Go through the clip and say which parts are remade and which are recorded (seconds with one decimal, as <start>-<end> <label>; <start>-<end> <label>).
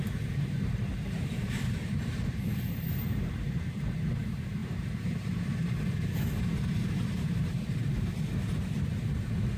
0.0-9.6 remade